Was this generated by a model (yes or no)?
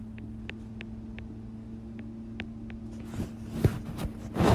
no